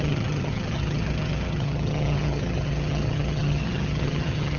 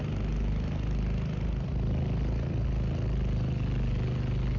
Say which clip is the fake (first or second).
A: first